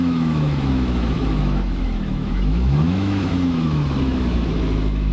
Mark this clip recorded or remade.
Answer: remade